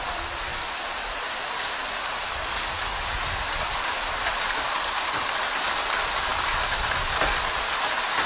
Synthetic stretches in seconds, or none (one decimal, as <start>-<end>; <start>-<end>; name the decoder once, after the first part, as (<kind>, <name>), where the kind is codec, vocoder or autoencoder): none